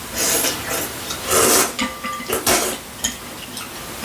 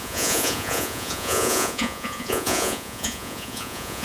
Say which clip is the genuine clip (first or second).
first